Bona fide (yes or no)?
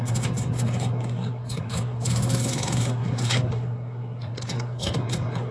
no